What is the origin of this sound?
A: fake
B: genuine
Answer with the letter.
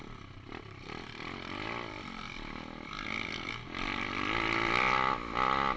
B